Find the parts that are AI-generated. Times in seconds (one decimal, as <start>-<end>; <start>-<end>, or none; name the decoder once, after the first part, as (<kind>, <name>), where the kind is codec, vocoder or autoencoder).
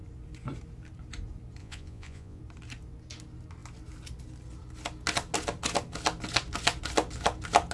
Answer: 1.6-2.4 (vocoder, Vocos)